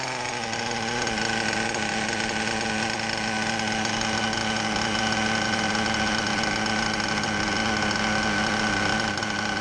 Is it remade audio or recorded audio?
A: recorded